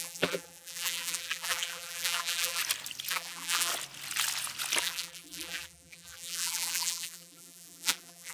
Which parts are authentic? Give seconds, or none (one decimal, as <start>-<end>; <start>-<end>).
2.6-3.1; 3.7-4.8